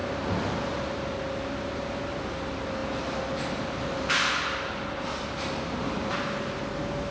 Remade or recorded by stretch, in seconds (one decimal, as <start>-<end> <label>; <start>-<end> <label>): 0.0-7.1 recorded

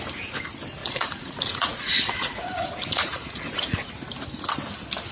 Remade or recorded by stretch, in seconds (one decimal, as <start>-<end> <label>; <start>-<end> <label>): 0.0-0.8 recorded; 0.8-3.9 remade; 3.9-5.1 recorded

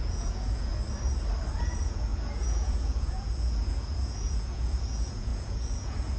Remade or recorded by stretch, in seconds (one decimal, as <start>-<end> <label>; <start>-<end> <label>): 0.0-0.7 remade; 0.7-1.5 recorded; 1.5-6.2 remade

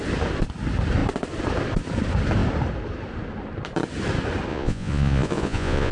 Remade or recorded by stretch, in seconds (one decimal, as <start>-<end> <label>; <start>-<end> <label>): 0.0-4.5 recorded; 4.5-5.9 remade